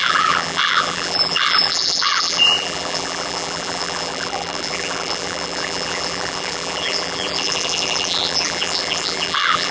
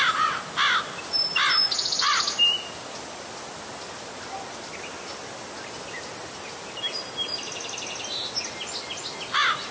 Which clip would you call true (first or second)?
second